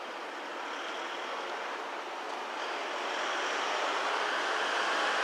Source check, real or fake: real